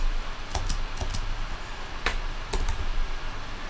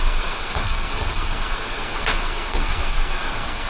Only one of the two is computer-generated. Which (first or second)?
second